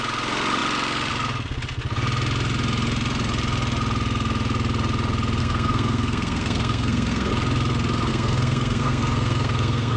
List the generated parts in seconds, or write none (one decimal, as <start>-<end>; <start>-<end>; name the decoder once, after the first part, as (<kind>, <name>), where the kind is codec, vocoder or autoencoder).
5.4-7.3 (codec, SNAC); 8.1-10.0